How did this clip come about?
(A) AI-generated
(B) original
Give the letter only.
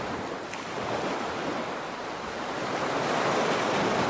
B